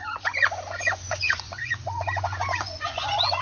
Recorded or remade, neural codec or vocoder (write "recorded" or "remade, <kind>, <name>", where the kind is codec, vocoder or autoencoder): remade, vocoder, Vocos